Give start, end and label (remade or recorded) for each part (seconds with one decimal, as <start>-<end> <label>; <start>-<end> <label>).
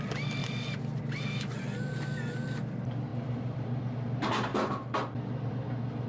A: 0.0-0.4 recorded; 0.4-1.0 remade; 1.0-3.1 recorded; 3.1-3.8 remade; 3.8-6.1 recorded